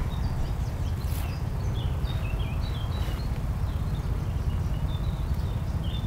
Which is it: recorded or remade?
recorded